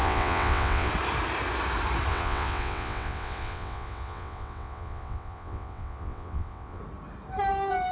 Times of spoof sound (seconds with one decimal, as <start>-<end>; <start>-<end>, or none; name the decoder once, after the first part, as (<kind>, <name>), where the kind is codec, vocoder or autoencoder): 0.0-0.9 (vocoder, WaveNeXt); 2.1-6.8